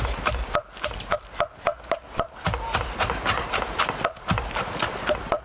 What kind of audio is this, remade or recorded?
recorded